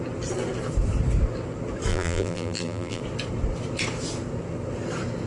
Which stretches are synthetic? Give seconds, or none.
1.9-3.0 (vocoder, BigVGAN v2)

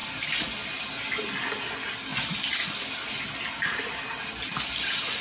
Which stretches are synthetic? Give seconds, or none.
none

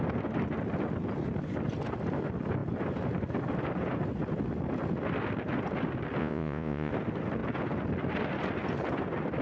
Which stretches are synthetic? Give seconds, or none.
6.2-6.9 (vocoder, Vocos)

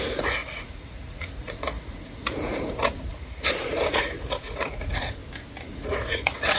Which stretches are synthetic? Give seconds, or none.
0.0-5.2 (vocoder, Vocos); 5.7-6.6

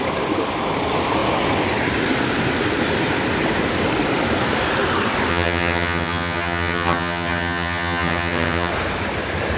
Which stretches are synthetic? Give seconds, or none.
5.3-8.7 (vocoder, HiFi-GAN)

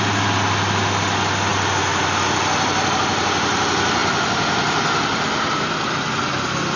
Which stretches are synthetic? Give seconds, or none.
none

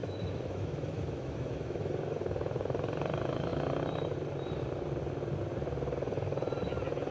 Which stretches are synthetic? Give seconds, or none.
0.0-1.9 (autoencoder, DAC-VAE)

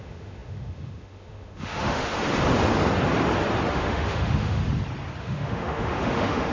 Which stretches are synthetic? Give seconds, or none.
0.0-2.1 (autoencoder, DAC-VAE); 3.7-4.6; 5.2-6.5